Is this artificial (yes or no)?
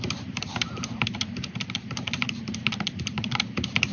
yes